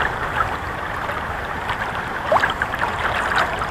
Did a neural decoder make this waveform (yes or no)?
yes